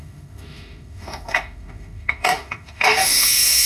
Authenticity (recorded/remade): remade